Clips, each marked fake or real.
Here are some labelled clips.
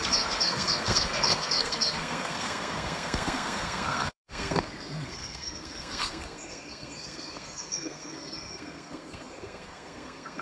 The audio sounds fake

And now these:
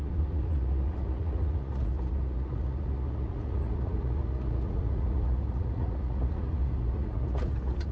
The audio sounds fake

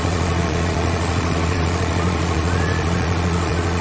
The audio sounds fake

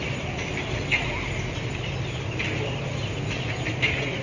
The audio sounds real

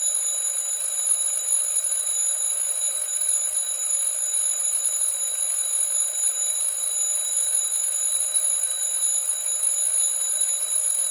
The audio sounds fake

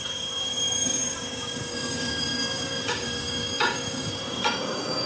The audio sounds fake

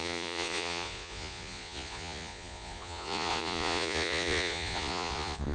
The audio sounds fake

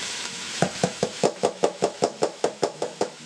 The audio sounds fake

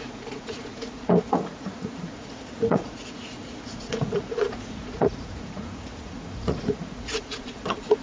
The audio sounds fake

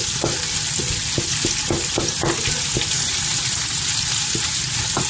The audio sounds real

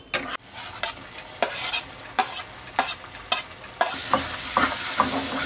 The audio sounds real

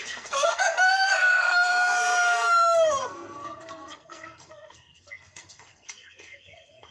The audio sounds fake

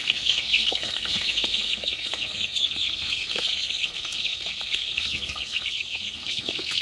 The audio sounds fake